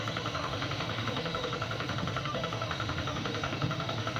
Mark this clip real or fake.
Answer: fake